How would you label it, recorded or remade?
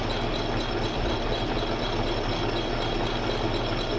recorded